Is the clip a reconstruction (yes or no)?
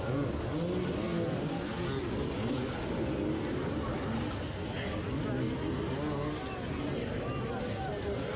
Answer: no